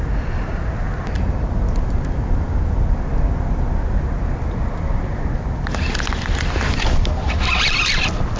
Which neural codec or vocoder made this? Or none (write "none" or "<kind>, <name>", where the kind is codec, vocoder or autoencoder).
none